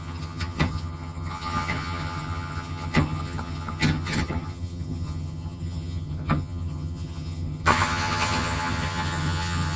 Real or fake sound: fake